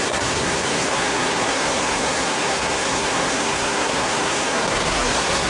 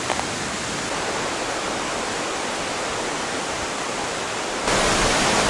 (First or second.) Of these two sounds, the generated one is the first